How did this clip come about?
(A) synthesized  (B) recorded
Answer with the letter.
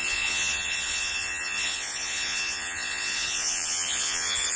A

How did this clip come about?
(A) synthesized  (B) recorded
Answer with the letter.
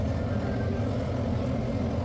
B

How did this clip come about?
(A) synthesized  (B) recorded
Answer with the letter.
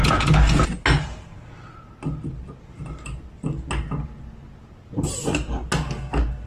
B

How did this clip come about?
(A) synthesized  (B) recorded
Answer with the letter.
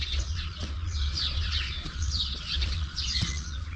A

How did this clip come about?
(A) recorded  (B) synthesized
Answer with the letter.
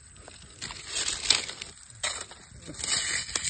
A